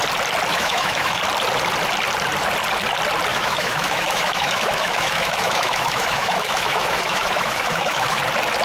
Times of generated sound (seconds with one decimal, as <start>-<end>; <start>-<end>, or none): 0.5-1.2; 3.3-8.2